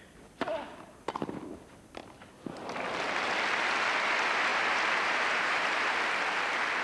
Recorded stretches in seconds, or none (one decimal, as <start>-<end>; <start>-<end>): 0.0-4.5; 5.8-6.8